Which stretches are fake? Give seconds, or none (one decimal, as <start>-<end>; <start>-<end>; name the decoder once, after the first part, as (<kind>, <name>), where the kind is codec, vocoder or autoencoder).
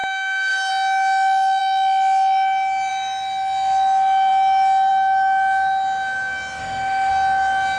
0.0-0.7 (autoencoder, DAC-VAE); 6.6-7.1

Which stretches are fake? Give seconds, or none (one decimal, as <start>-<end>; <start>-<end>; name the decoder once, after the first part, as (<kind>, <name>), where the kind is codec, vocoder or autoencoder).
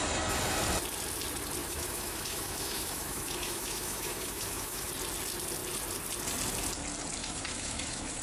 1.6-4.9 (autoencoder, DAC-VAE); 7.2-8.2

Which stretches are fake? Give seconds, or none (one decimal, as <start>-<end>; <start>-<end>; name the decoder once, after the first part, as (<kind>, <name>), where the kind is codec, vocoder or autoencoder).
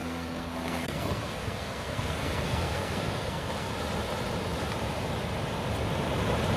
0.0-3.7 (codec, SNAC)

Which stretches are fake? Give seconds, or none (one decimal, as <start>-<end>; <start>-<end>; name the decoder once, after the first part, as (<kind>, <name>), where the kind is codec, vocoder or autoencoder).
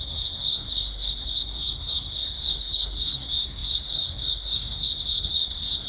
0.0-5.9 (codec, SNAC)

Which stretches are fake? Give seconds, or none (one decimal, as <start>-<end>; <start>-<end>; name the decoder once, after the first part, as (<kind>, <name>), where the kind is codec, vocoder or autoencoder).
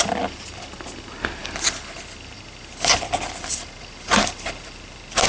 none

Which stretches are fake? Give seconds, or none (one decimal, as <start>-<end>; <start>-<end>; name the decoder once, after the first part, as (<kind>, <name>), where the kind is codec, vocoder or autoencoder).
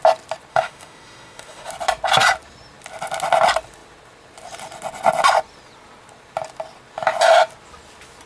0.5-1.7 (autoencoder, DAC-VAE)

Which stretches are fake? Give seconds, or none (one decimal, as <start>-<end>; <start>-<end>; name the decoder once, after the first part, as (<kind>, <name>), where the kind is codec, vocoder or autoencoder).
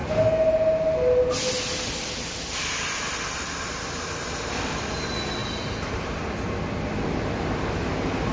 5.4-6.5 (vocoder, BigVGAN v2)